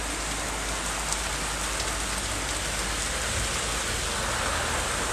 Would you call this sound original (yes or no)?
yes